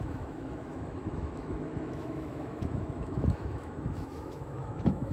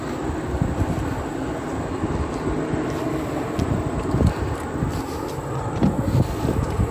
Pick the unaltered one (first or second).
second